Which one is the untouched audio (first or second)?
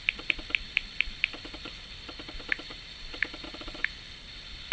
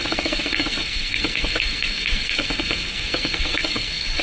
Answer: first